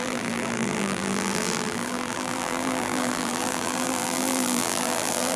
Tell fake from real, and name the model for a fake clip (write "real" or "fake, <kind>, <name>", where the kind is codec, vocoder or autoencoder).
fake, vocoder, BigVGAN v2